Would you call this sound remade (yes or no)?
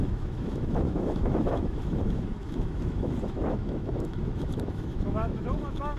yes